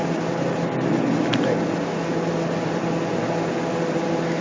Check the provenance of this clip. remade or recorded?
recorded